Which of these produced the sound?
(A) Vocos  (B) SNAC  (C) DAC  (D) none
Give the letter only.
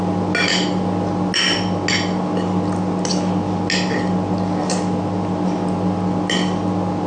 D